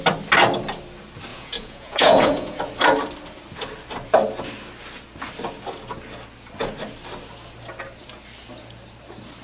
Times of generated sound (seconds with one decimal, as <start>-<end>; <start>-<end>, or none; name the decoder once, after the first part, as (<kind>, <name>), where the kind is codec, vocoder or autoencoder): 1.3-2.6 (vocoder, Vocos)